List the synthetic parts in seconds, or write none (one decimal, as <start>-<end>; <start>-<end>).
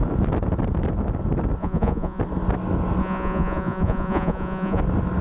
1.6-2.2; 3.0-4.8